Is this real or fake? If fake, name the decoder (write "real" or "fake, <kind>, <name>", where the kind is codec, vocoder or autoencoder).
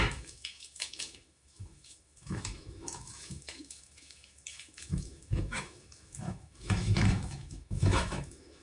fake, autoencoder, DAC-VAE